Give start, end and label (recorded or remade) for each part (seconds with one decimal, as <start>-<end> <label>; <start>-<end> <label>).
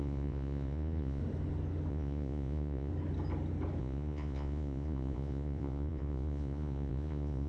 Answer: 0.0-1.2 remade; 1.2-1.9 recorded; 1.9-2.9 remade; 2.9-3.8 recorded; 3.8-7.5 remade